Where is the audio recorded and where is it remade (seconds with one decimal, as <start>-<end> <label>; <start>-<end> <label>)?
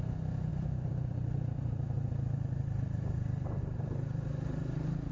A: 0.0-5.1 remade